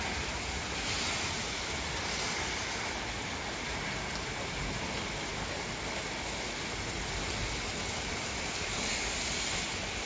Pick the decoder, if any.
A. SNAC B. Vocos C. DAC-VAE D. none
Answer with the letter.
D